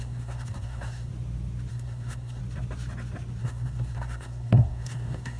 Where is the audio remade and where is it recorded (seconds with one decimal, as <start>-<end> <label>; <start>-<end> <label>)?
0.0-1.1 remade; 1.1-1.7 recorded; 1.7-2.4 remade; 2.4-3.4 recorded; 3.4-5.4 remade